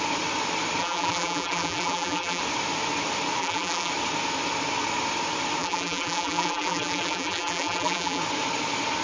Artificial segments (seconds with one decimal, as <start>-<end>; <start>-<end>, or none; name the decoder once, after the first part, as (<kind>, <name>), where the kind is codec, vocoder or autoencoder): 0.8-2.4 (vocoder, BigVGAN v2); 3.4-3.9; 5.6-8.2